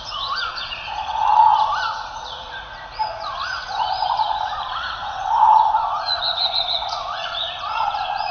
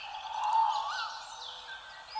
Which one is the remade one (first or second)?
first